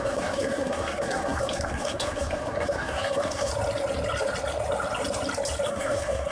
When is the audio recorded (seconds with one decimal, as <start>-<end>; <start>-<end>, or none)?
3.5-5.7